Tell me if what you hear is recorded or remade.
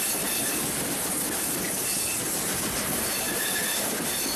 recorded